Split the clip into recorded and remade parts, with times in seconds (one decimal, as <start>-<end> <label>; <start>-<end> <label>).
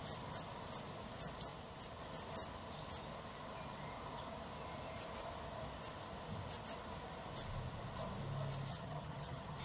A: 0.0-8.7 recorded; 8.7-9.6 remade